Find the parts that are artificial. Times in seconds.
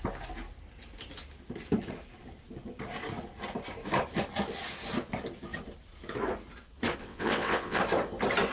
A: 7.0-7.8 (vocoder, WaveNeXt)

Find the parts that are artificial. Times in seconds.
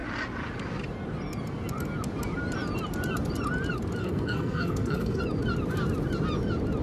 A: 4.0-5.2 (codec, SNAC)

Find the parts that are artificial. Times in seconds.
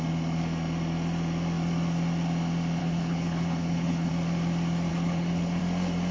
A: 2.8-4.1 (codec, HILCodec); 4.9-5.6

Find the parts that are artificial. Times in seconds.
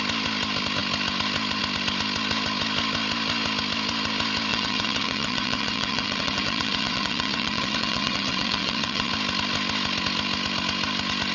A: 4.5-9.1 (vocoder, WaveNeXt)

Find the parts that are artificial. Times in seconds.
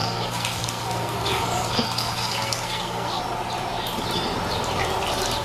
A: 0.0-3.2 (codec, SNAC)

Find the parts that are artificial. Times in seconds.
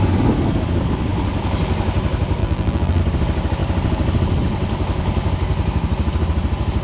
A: 2.4-3.0 (vocoder, BigVGAN v2)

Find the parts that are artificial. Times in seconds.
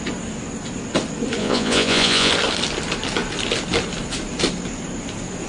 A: 1.4-2.3 (vocoder, Vocos)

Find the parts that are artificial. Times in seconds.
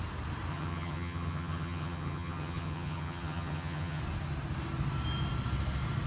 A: 0.5-4.0 (vocoder, HiFi-GAN)